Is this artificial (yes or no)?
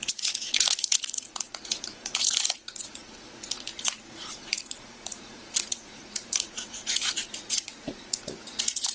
yes